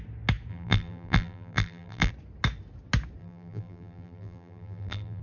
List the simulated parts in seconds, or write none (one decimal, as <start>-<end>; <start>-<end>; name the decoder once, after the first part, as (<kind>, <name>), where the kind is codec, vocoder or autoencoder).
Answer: 0.5-2.1 (vocoder, BigVGAN v2); 3.2-5.2